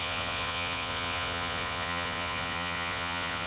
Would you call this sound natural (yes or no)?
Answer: no